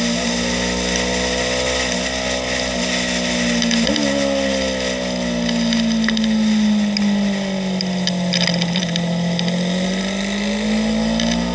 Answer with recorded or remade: recorded